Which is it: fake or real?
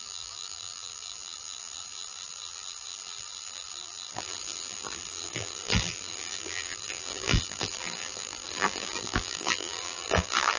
fake